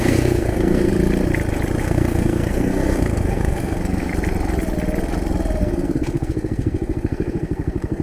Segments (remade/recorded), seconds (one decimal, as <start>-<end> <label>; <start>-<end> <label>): 0.0-0.9 remade; 0.9-1.8 recorded; 1.8-4.1 remade; 4.1-5.6 recorded; 5.6-8.0 remade